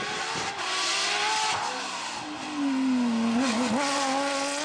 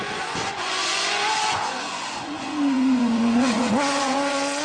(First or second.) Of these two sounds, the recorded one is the first